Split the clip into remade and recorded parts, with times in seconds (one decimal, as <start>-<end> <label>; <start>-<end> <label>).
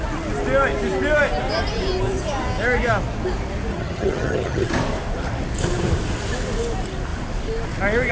0.0-3.7 recorded; 3.7-4.7 remade; 4.7-8.1 recorded